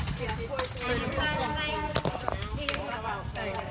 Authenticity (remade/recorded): recorded